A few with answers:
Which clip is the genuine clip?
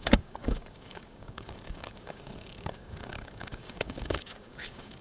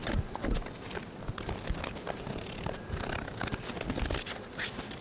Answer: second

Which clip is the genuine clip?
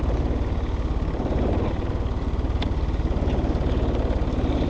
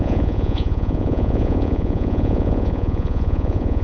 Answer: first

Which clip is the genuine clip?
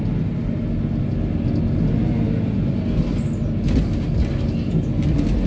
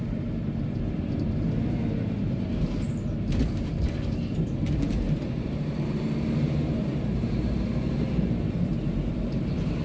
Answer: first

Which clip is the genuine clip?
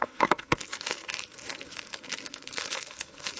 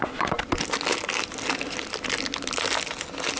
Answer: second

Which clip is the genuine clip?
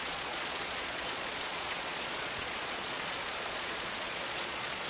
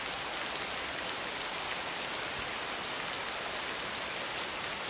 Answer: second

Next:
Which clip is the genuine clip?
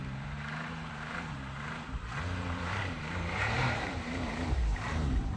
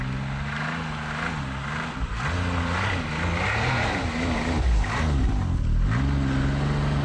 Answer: second